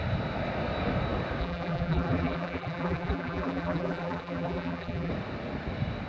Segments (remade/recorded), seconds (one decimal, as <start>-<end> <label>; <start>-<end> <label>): 0.0-1.4 recorded; 1.4-5.1 remade; 5.1-6.1 recorded